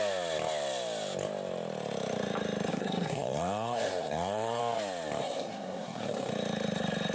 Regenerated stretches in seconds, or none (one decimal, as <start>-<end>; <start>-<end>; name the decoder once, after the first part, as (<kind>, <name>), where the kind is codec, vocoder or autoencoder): 2.7-4.6 (codec, SNAC); 5.2-6.3